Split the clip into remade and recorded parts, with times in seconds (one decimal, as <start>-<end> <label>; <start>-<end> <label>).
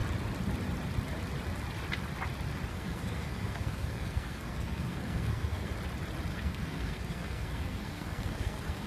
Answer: 0.0-2.7 recorded; 2.7-5.7 remade; 5.7-6.3 recorded; 6.3-8.9 remade